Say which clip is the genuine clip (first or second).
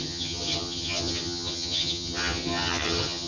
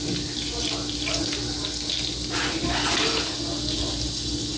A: second